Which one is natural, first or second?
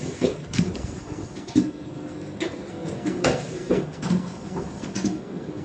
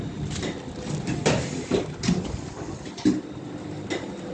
second